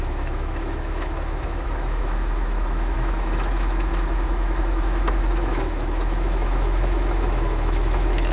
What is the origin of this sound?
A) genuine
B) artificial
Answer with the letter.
B